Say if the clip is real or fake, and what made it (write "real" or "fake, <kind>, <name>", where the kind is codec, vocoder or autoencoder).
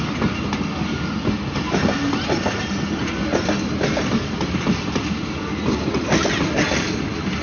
real